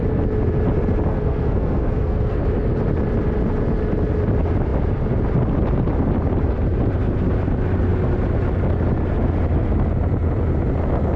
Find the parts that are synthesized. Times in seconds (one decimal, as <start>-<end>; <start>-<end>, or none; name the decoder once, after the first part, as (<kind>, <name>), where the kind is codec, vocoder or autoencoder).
1.1-2.4 (codec, SNAC)